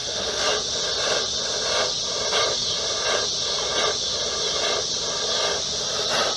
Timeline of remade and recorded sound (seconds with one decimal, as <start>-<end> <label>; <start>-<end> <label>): 0.0-0.5 remade; 0.5-6.4 recorded